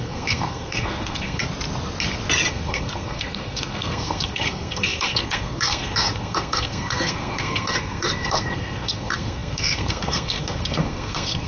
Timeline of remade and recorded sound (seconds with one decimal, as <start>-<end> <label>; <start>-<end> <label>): 0.0-1.4 remade; 1.4-2.5 recorded; 2.5-11.5 remade